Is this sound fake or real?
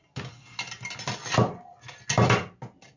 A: real